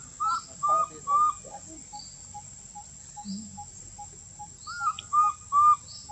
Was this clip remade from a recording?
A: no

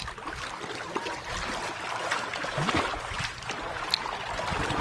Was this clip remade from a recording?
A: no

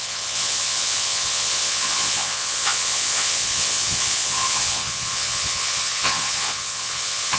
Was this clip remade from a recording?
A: yes